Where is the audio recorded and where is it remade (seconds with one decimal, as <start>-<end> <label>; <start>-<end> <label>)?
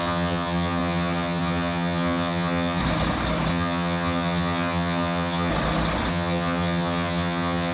0.0-2.8 remade; 2.8-3.5 recorded; 3.5-5.5 remade; 5.5-6.1 recorded; 6.1-7.7 remade